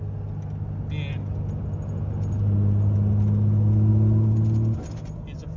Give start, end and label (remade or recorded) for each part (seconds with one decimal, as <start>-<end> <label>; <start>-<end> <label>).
0.0-5.6 recorded

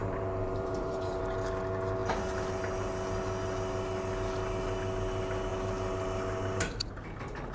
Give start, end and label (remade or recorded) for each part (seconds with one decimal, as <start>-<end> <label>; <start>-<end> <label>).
0.0-1.2 remade; 1.2-7.5 recorded

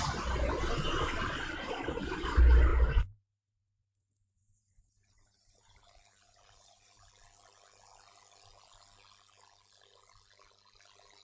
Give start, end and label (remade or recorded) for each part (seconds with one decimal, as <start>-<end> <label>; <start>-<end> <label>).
0.0-2.7 recorded; 2.7-7.1 remade; 7.1-11.2 recorded